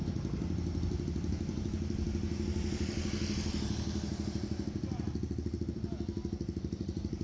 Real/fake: real